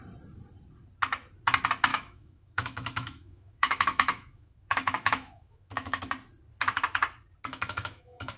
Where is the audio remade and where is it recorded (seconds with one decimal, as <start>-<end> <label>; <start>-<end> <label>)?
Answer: 0.0-1.9 recorded; 1.9-6.0 remade; 6.0-7.5 recorded; 7.5-8.4 remade